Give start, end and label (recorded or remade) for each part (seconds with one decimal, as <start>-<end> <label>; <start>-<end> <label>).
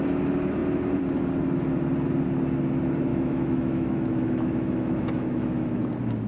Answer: 0.0-3.1 recorded; 3.1-5.8 remade; 5.8-6.3 recorded